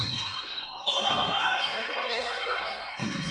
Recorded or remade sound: remade